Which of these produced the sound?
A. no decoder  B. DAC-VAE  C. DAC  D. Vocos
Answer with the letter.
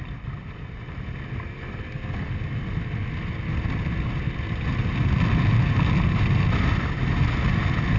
A